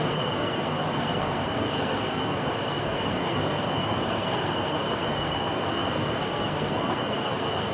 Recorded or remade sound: remade